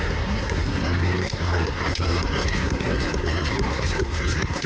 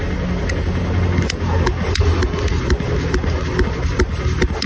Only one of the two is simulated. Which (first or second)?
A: first